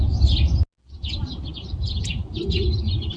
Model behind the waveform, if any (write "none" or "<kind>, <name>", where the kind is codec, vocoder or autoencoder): none